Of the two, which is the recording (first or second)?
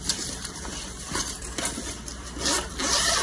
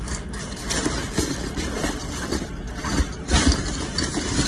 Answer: second